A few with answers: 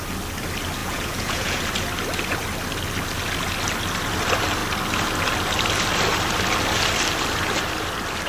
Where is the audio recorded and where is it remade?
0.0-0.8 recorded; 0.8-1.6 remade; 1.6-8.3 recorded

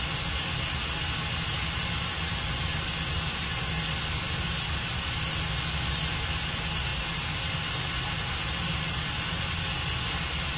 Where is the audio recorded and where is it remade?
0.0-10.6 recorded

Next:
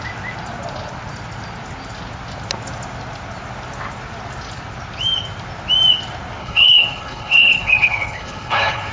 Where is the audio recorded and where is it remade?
0.0-6.4 recorded; 6.4-8.9 remade

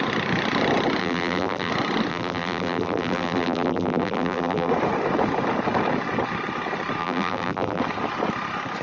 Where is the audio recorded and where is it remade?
0.0-1.0 recorded; 1.0-1.7 remade; 1.7-2.1 recorded; 2.1-4.7 remade; 4.7-7.0 recorded; 7.0-7.8 remade; 7.8-8.8 recorded

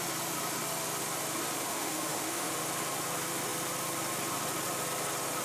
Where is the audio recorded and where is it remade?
0.0-1.7 recorded; 1.7-2.5 remade; 2.5-5.4 recorded

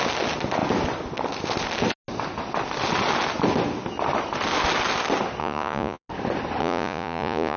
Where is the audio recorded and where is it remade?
0.0-5.4 recorded; 5.4-6.1 remade; 6.1-6.6 recorded; 6.6-7.6 remade